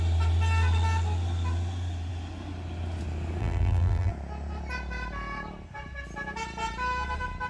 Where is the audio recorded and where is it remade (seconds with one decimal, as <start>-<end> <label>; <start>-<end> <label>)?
0.0-3.4 recorded; 3.4-4.1 remade; 4.1-7.5 recorded